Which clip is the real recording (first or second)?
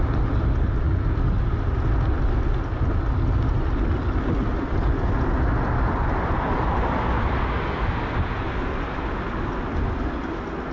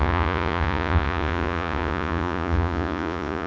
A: first